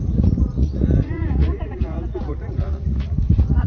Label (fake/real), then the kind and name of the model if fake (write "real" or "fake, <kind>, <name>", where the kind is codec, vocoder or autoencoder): fake, vocoder, Vocos